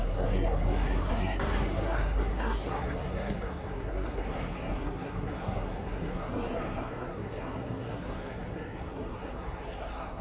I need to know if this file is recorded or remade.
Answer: remade